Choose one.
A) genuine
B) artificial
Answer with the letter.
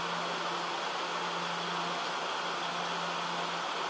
A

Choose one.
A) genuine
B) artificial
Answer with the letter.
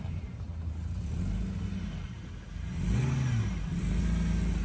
A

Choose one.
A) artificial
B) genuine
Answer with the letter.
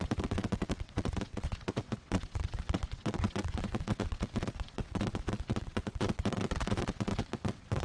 A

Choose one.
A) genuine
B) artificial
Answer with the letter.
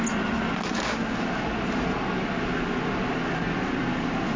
A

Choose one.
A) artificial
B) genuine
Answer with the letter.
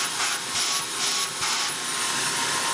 B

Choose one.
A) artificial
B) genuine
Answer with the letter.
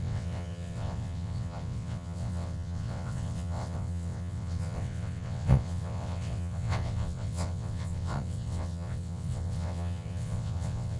A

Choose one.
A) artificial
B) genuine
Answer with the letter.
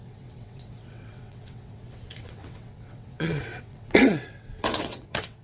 A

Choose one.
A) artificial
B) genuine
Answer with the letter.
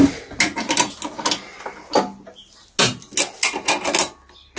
B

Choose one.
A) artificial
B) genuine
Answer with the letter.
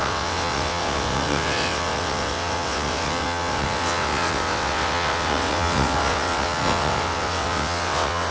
A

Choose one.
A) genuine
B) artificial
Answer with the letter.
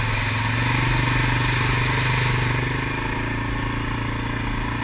A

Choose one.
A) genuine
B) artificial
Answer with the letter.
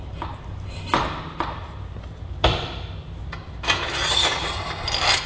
A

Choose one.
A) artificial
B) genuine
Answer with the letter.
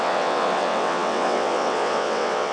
A